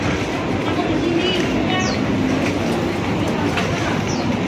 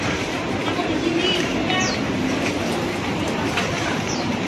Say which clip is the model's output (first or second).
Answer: second